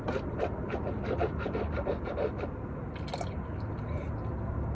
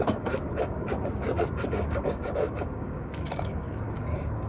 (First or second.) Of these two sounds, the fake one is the second